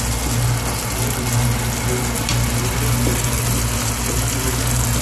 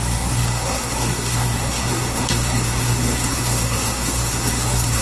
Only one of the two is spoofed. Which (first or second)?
second